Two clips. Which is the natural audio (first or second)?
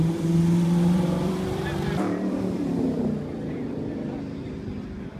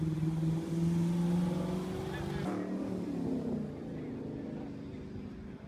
second